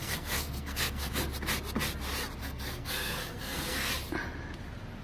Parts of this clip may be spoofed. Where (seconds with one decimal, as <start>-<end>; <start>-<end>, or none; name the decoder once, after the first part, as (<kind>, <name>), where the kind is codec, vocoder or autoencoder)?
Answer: 0.0-1.1 (codec, SNAC); 2.4-3.9